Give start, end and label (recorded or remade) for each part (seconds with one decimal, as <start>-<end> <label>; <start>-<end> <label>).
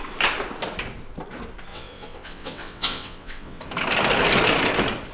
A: 0.0-1.7 recorded; 1.7-3.6 remade; 3.6-5.1 recorded